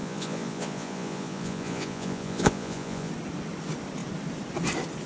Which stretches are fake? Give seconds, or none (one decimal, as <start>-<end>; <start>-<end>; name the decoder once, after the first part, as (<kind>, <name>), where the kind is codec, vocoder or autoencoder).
0.0-3.1 (vocoder, Vocos)